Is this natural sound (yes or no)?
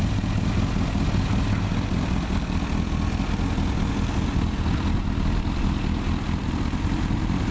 yes